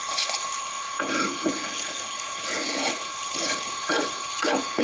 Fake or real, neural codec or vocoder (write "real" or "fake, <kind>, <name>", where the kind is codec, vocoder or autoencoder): fake, codec, HILCodec